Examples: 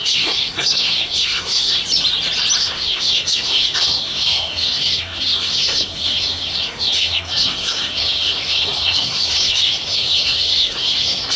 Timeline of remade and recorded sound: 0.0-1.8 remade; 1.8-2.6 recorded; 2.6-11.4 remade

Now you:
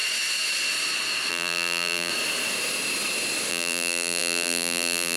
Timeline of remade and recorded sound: 0.0-1.3 recorded; 1.3-2.1 remade; 2.1-3.5 recorded; 3.5-5.2 remade

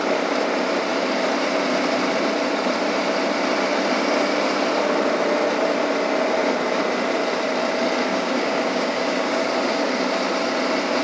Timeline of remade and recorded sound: 0.0-8.1 recorded; 8.1-9.5 remade; 9.5-11.0 recorded

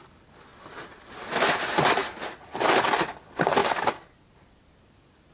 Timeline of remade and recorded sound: 0.0-5.3 recorded

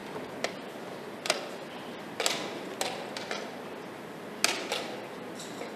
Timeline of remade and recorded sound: 0.0-5.8 recorded

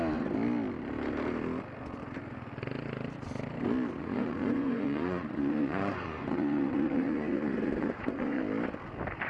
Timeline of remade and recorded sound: 0.0-4.0 recorded; 4.0-8.4 remade; 8.4-9.3 recorded

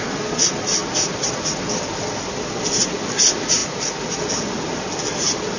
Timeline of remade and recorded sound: 0.0-5.6 recorded